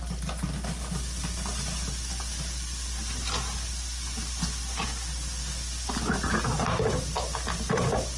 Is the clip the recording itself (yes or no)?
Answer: yes